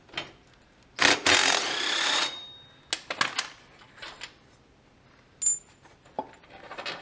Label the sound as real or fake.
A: real